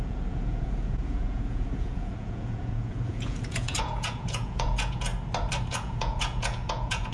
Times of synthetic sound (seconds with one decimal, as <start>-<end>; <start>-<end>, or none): 0.0-5.1; 5.7-7.1